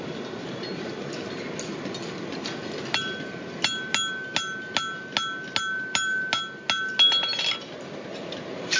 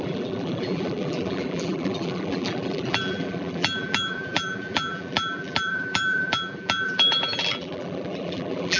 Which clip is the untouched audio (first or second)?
first